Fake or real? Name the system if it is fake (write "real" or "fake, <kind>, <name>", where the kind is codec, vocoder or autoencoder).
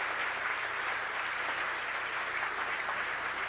real